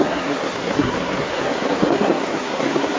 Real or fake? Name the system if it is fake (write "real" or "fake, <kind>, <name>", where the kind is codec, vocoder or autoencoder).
fake, codec, SNAC